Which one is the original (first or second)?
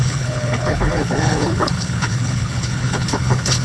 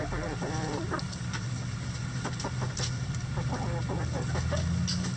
second